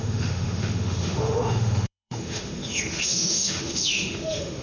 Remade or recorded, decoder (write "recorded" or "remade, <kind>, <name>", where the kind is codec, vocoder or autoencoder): remade, autoencoder, DAC-VAE